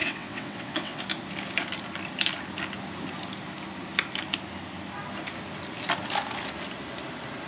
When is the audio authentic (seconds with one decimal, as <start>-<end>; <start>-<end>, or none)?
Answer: 1.0-7.5